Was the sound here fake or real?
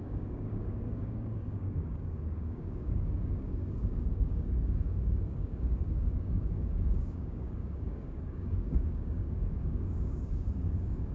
fake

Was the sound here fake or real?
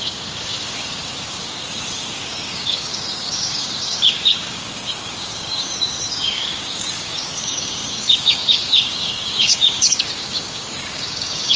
fake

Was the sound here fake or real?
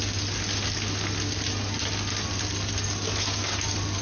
real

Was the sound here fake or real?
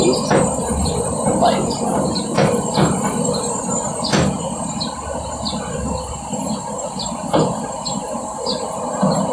real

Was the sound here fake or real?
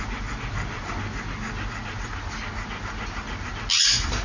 real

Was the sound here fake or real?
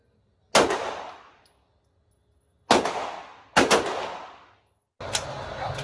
real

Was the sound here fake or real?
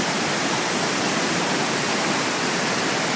real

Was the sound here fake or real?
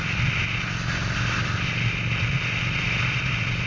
real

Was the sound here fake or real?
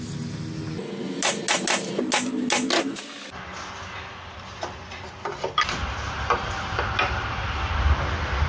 real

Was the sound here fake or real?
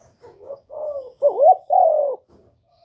fake